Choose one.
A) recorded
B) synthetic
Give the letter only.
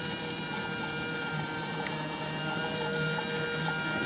B